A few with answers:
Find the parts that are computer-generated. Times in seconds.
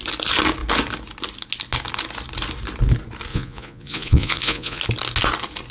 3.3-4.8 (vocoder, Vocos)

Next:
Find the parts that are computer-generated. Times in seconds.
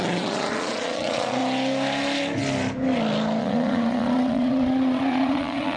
0.0-1.4 (vocoder, Vocos); 3.4-5.8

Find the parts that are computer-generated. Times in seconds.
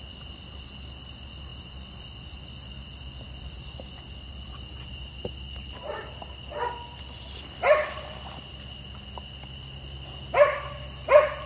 none